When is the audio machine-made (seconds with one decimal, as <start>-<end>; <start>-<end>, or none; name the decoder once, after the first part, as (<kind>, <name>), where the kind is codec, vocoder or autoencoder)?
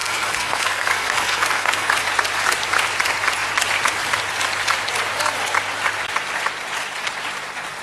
0.0-1.9 (codec, SNAC)